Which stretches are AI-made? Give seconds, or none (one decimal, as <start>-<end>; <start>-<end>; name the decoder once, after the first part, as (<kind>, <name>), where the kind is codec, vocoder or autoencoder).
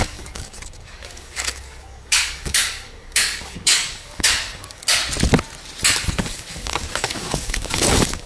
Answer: 0.0-4.8 (codec, DAC); 6.2-8.3